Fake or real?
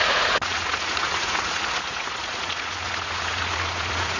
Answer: fake